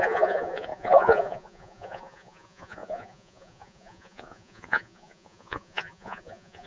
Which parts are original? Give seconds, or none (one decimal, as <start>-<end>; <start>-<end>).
none

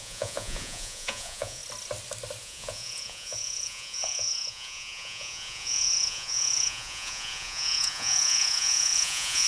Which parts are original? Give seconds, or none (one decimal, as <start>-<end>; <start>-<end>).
1.6-2.4

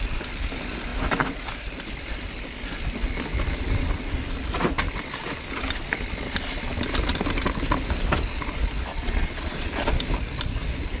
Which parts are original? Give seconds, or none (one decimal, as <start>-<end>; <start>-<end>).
0.0-8.9; 9.9-11.0

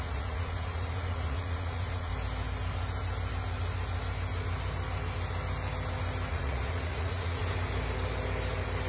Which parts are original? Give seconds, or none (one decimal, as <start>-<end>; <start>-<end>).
2.1-6.3; 7.4-8.9

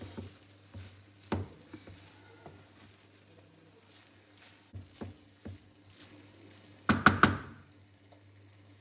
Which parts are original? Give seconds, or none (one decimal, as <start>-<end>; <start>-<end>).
0.0-8.8

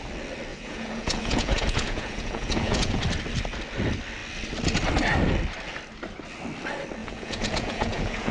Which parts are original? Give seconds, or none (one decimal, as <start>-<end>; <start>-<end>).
0.0-0.5; 3.0-7.0

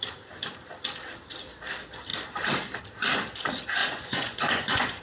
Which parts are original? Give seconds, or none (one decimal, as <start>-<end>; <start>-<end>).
0.0-3.8